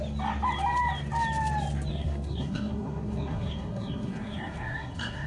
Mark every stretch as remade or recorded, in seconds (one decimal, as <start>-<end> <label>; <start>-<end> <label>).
0.0-1.9 recorded; 1.9-5.3 remade